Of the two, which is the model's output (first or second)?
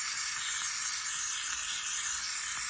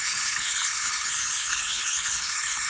second